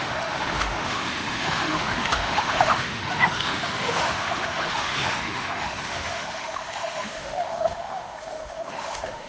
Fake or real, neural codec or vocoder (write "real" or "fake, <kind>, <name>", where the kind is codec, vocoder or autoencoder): fake, autoencoder, DAC-VAE